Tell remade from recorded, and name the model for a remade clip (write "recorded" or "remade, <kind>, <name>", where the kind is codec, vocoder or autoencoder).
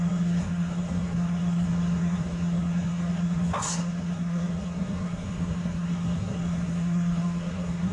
remade, codec, SNAC